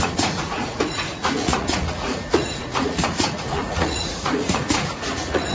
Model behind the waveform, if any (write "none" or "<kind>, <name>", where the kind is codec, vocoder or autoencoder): vocoder, Vocos